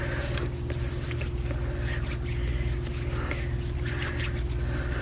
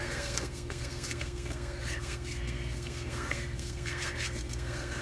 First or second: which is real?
first